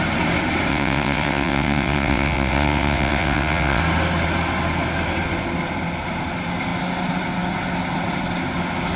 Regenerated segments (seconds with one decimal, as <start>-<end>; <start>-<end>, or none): 0.7-3.8